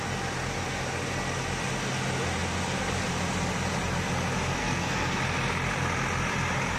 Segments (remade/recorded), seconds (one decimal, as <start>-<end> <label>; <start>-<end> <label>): 0.0-4.6 recorded; 4.6-5.2 remade; 5.2-6.8 recorded